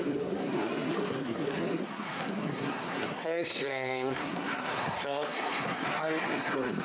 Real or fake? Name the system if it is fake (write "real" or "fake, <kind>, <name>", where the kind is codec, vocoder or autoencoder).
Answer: fake, codec, SNAC